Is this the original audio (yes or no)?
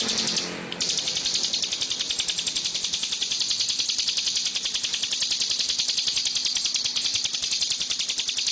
yes